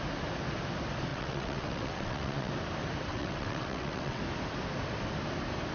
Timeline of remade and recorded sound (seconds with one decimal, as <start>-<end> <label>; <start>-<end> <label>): 0.0-1.1 recorded; 1.1-2.5 remade; 2.5-3.1 recorded; 3.1-4.2 remade; 4.2-5.7 recorded